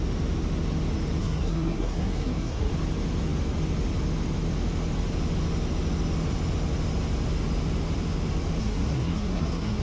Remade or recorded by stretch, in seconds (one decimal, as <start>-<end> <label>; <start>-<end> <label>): 0.0-1.2 recorded; 1.2-2.7 remade; 2.7-8.6 recorded; 8.6-9.8 remade

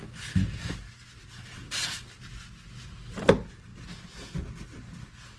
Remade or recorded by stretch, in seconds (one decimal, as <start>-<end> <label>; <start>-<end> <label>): 0.0-5.4 recorded

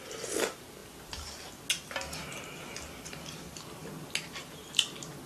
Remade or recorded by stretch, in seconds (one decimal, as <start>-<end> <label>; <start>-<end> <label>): 0.0-5.3 recorded

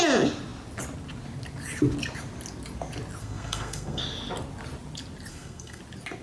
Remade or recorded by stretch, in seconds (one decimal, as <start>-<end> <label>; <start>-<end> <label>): 0.0-3.2 recorded; 3.2-4.0 remade; 4.0-5.3 recorded; 5.3-5.8 remade; 5.8-6.2 recorded

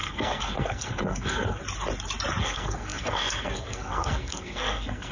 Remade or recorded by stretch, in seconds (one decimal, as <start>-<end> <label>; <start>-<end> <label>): 0.0-1.6 remade; 1.6-2.4 recorded; 2.4-5.1 remade

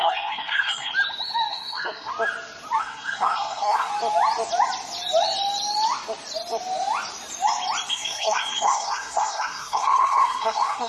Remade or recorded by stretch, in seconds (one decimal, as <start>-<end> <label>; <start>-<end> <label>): 0.0-0.9 remade; 0.9-1.5 recorded; 1.5-2.1 remade; 2.1-2.8 recorded; 2.8-3.9 remade; 3.9-7.9 recorded; 7.9-10.9 remade

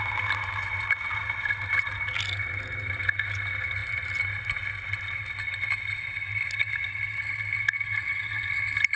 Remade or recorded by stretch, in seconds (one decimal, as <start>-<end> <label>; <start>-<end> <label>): 0.0-9.0 recorded

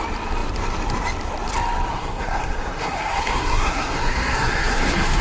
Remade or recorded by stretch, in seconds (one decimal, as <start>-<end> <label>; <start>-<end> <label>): 0.0-1.9 recorded; 1.9-5.2 remade